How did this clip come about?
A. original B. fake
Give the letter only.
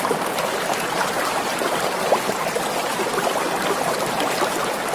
A